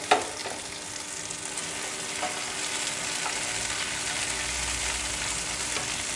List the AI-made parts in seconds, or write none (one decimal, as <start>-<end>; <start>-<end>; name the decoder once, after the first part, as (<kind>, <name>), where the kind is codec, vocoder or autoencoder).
none